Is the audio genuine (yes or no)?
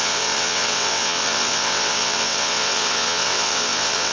no